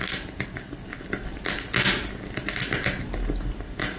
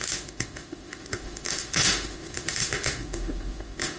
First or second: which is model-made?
second